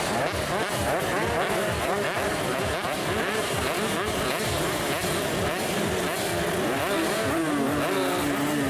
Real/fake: real